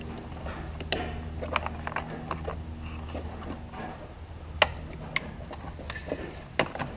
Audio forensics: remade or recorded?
recorded